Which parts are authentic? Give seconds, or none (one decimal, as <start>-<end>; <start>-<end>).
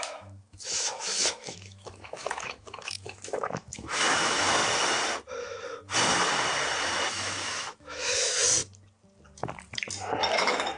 4.6-7.1; 8.4-10.3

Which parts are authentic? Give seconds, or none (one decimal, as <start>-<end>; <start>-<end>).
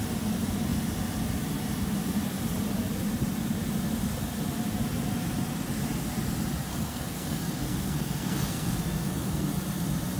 0.0-6.7; 9.5-10.2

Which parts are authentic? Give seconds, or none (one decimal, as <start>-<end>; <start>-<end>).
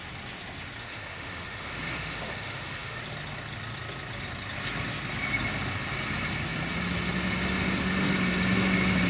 0.0-0.8; 3.0-9.1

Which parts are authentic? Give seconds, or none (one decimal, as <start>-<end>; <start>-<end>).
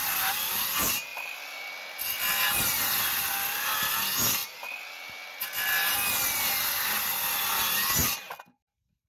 0.0-1.1; 1.7-7.1; 7.6-9.1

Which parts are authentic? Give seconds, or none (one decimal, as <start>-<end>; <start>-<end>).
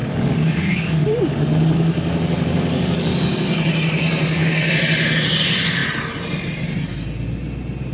4.7-7.9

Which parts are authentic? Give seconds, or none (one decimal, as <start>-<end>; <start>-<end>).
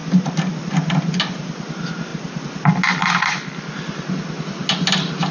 0.0-5.3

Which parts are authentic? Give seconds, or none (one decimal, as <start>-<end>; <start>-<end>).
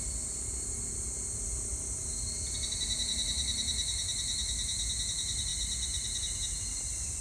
0.0-7.2